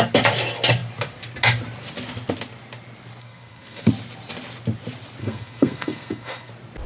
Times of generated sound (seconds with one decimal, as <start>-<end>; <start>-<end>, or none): 3.2-3.9; 5.2-6.5